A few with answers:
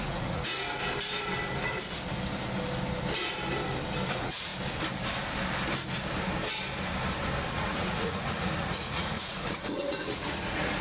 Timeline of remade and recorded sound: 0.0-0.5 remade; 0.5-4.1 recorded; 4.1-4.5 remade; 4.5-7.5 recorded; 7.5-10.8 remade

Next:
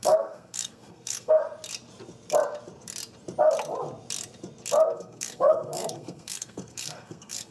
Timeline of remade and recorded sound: 0.0-1.4 remade; 1.4-4.8 recorded; 4.8-7.5 remade

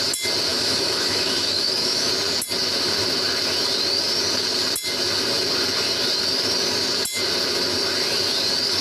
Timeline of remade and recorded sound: 0.0-0.5 recorded; 0.5-2.1 remade; 2.1-8.8 recorded